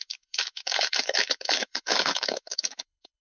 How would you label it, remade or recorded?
remade